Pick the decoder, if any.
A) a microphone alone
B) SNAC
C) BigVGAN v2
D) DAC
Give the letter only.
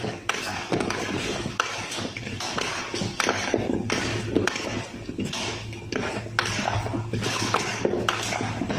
D